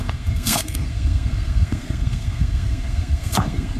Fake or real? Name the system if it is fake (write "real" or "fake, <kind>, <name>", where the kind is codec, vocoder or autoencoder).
fake, codec, SNAC